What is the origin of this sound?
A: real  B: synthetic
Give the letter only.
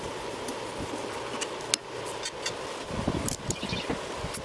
A